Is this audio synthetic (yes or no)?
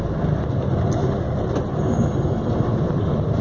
no